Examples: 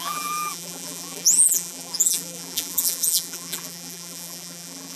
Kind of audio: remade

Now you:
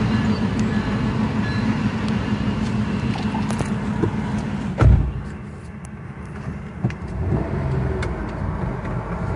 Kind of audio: remade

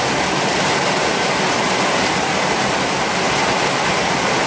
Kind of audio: recorded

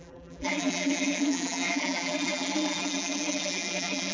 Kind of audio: remade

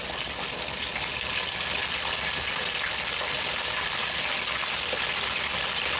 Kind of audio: recorded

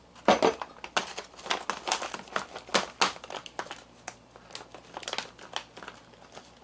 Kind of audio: recorded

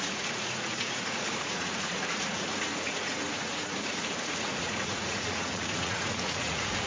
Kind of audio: remade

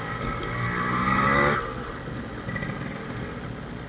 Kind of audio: recorded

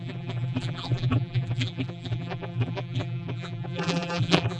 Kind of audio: remade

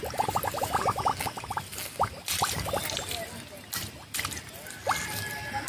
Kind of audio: recorded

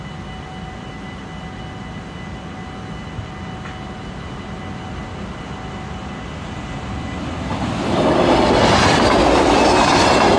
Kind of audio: recorded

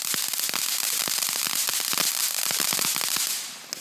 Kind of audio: recorded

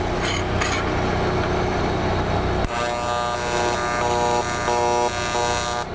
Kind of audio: recorded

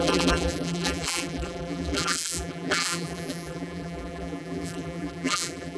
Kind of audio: remade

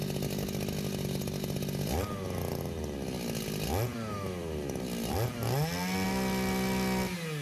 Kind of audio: recorded